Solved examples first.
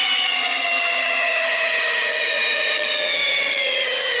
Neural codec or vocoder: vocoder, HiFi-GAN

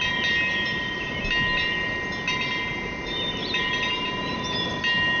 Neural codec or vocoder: none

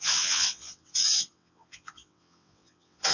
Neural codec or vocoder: vocoder, WaveNeXt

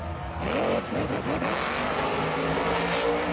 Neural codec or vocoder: none